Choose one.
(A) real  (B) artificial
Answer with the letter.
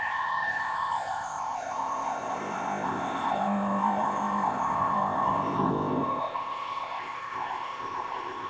B